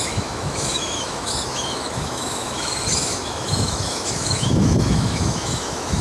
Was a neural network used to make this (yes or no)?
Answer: yes